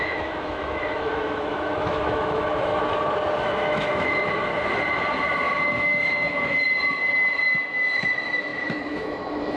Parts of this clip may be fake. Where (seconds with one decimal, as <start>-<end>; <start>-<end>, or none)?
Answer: 0.0-2.7; 3.4-4.5; 5.6-9.6